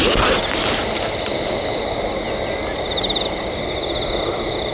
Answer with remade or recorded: recorded